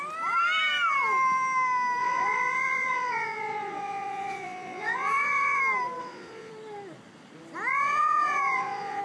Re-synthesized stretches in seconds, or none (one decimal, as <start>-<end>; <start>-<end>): 2.0-5.6; 6.0-6.5; 7.7-9.0